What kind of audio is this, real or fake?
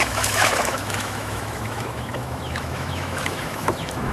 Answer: fake